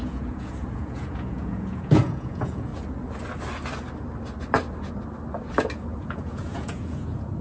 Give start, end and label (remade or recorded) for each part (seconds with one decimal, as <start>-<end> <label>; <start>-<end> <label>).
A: 0.0-2.7 remade; 2.7-6.0 recorded; 6.0-7.4 remade

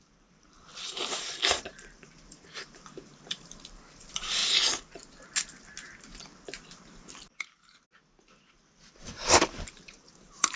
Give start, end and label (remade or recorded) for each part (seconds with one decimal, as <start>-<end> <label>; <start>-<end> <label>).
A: 0.0-4.4 remade; 4.4-8.9 recorded; 8.9-10.6 remade

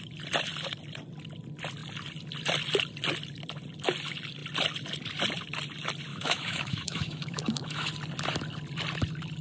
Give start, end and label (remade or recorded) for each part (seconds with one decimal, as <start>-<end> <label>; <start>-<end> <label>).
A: 0.0-6.1 recorded; 6.1-7.9 remade; 7.9-9.4 recorded

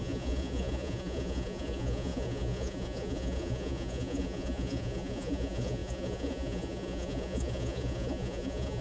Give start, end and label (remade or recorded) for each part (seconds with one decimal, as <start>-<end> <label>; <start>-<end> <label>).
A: 0.0-8.8 remade